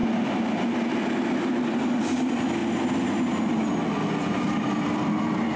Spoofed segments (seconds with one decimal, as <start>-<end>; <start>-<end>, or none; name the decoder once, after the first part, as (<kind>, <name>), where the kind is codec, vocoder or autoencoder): 4.2-5.1 (vocoder, BigVGAN v2)